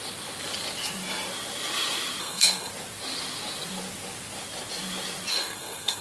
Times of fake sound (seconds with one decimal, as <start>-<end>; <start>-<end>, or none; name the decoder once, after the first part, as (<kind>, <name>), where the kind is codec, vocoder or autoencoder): 2.2-2.7 (codec, SNAC); 5.3-6.0